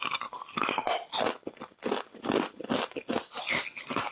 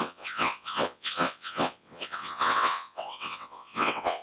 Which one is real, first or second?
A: first